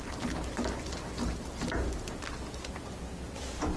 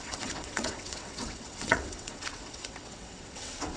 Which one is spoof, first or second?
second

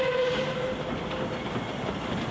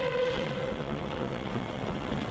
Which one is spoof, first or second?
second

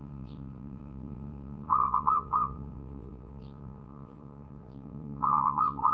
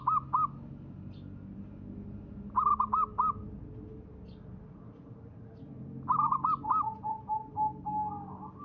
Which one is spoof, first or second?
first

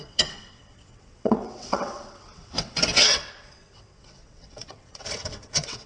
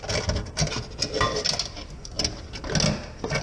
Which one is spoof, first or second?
first